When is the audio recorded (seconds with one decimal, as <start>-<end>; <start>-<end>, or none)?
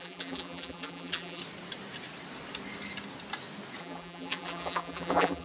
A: 1.4-3.8